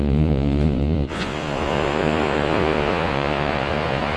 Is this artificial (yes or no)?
yes